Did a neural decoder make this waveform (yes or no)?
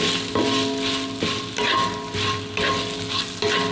no